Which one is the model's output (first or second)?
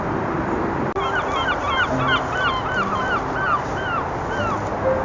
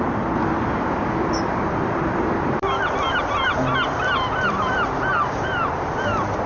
second